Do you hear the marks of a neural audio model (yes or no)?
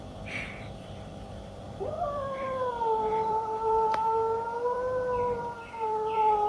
yes